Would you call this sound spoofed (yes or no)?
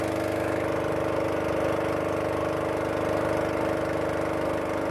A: no